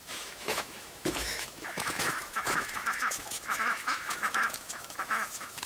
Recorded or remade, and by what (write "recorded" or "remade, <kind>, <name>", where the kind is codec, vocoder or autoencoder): remade, autoencoder, DAC-VAE